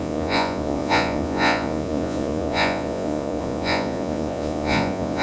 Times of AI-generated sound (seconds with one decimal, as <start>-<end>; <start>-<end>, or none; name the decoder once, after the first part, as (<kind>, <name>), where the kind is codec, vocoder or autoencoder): 0.0-5.2 (vocoder, Vocos)